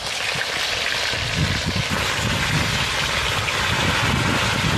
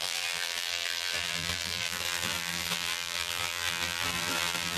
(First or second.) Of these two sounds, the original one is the first